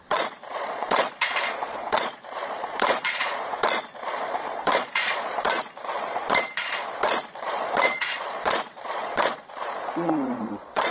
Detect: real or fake fake